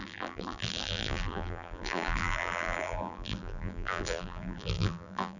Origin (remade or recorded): remade